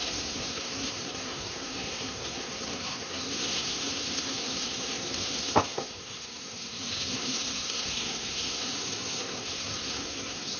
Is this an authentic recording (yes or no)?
no